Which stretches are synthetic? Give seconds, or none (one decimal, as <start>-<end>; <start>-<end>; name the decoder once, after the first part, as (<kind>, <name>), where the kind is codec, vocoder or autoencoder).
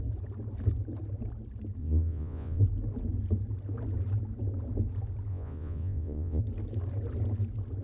1.8-2.6 (vocoder, Vocos); 5.3-6.4